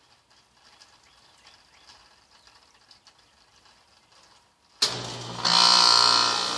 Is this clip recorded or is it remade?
recorded